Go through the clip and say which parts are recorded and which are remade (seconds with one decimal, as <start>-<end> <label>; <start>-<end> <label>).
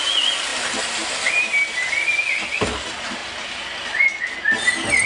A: 0.0-5.1 recorded